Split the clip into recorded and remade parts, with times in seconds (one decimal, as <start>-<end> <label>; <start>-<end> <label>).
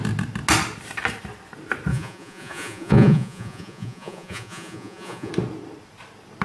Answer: 0.0-1.9 recorded; 1.9-5.3 remade; 5.3-6.4 recorded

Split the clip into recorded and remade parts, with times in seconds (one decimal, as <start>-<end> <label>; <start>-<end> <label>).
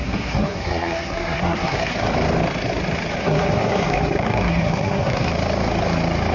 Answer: 0.0-1.9 remade; 1.9-3.2 recorded; 3.2-5.3 remade; 5.3-6.3 recorded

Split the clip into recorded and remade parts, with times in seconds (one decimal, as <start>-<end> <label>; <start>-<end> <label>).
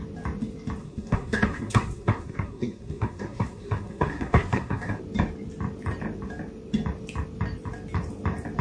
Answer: 0.0-0.8 recorded; 0.8-5.0 remade; 5.0-8.6 recorded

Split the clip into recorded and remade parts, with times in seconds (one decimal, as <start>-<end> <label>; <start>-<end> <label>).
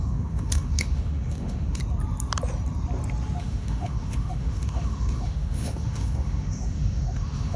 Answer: 0.0-1.8 remade; 1.8-3.4 recorded; 3.4-7.6 remade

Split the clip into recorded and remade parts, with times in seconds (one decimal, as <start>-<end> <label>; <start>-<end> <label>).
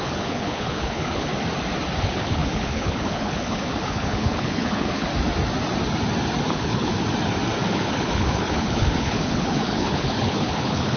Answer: 0.0-1.3 remade; 1.3-2.0 recorded; 2.0-5.1 remade; 5.1-6.5 recorded; 6.5-6.9 remade; 6.9-7.7 recorded; 7.7-11.0 remade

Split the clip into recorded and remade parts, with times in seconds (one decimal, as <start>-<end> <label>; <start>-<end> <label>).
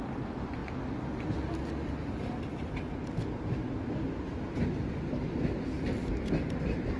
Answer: 0.0-7.0 recorded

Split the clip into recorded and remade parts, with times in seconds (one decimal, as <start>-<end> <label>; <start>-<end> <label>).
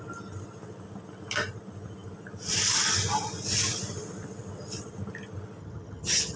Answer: 0.0-5.6 recorded; 5.6-6.4 remade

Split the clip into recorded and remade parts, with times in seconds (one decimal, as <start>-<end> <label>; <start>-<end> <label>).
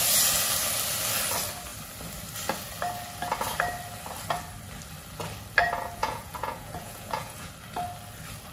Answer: 0.0-6.0 recorded; 6.0-7.5 remade; 7.5-8.5 recorded